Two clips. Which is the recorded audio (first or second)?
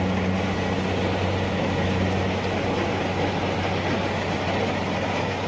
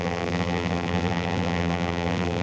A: first